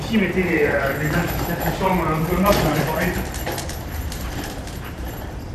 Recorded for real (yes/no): no